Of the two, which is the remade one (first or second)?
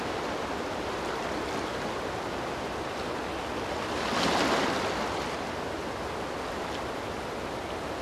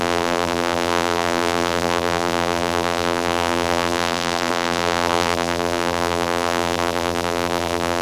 second